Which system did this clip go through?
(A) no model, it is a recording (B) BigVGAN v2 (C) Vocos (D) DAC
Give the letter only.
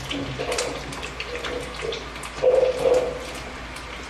A